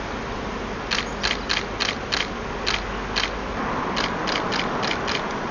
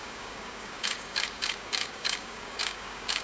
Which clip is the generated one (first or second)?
second